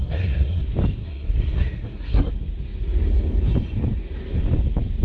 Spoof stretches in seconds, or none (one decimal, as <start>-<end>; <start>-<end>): 0.0-0.6; 1.0-2.3